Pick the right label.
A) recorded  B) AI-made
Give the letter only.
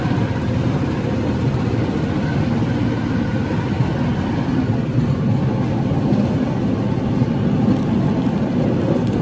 A